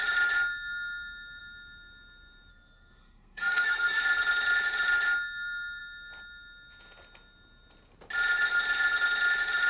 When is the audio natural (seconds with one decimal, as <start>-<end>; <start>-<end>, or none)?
0.0-2.5; 4.0-9.7